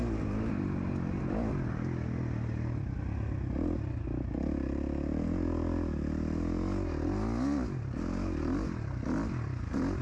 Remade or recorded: recorded